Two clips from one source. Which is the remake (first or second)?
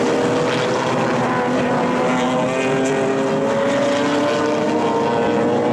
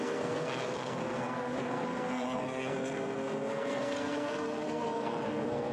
second